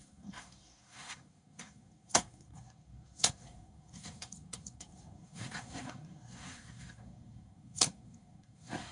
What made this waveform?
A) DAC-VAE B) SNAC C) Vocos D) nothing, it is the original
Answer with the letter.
B